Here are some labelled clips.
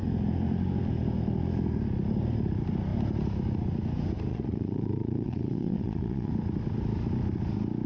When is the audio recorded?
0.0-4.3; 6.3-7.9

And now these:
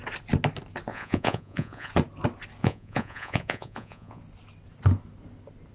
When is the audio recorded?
0.0-0.9; 1.9-2.6; 4.2-5.7